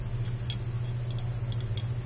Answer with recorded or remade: recorded